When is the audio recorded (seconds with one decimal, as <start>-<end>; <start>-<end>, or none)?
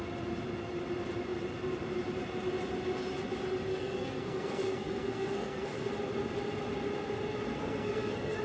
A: 0.0-3.7; 5.9-7.5